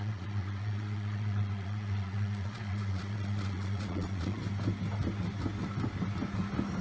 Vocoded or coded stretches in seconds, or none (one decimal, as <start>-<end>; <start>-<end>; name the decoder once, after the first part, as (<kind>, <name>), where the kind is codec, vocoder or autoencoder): 0.0-4.4 (vocoder, Vocos)